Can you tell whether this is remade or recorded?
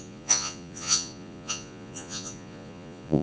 remade